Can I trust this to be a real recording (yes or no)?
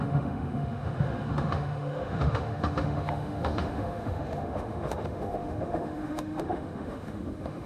no